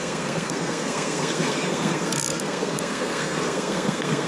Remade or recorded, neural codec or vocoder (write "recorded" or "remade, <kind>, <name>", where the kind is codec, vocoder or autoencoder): remade, codec, SNAC